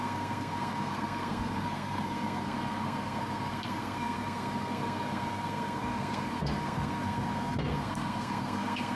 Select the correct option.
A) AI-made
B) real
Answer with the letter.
A